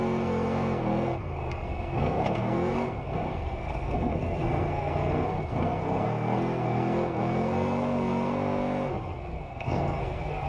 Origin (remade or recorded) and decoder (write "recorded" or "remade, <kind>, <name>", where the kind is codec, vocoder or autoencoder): remade, codec, SNAC